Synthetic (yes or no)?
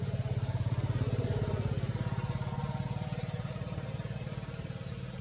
no